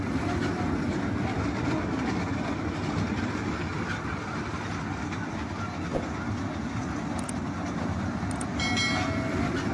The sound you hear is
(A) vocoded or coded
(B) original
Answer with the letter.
B